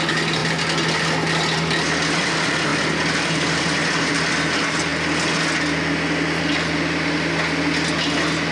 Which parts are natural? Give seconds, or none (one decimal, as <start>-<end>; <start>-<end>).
0.0-8.5

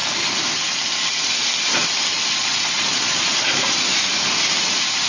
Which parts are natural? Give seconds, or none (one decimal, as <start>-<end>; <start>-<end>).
0.0-2.4; 3.8-5.1

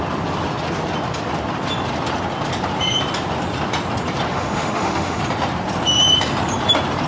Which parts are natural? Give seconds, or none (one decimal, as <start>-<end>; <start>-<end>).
0.0-4.3; 5.2-7.1